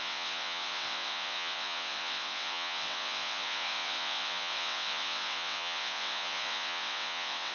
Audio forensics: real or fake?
fake